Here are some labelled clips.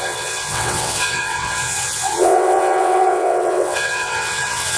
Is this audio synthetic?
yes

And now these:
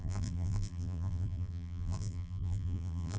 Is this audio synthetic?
yes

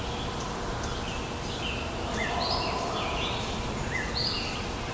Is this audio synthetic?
no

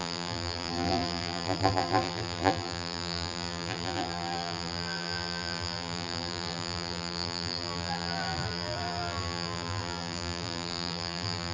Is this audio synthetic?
yes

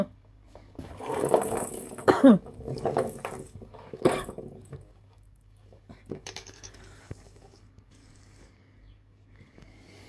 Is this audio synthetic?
yes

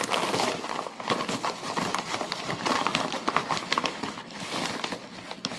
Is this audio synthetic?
no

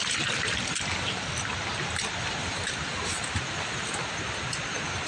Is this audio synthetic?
no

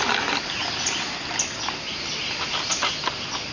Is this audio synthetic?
no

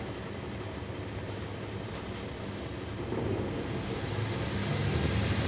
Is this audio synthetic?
no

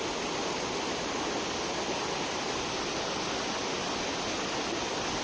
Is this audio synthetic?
no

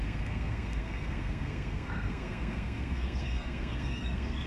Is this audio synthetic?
yes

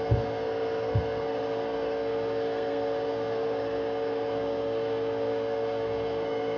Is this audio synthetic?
yes